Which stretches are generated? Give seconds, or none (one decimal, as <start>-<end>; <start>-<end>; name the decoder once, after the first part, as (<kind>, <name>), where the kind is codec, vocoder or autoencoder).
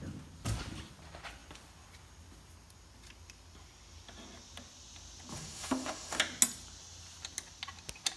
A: 5.3-6.2 (autoencoder, DAC-VAE)